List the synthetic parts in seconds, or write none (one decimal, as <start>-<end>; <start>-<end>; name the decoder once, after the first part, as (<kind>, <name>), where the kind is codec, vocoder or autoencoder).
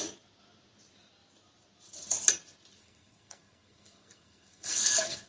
2.8-5.3 (codec, SNAC)